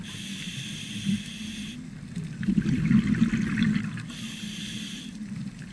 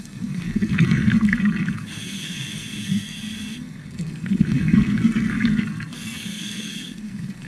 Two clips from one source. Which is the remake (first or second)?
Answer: second